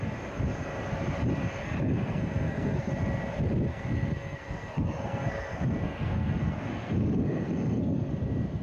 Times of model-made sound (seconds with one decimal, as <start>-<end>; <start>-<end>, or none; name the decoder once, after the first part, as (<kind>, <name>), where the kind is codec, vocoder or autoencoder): 1.6-2.9 (codec, SNAC); 3.7-8.1